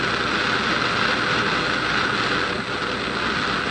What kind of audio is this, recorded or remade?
recorded